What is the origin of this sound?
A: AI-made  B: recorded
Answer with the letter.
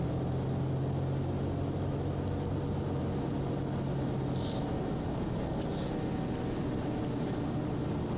B